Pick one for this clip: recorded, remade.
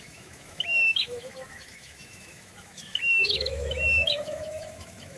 remade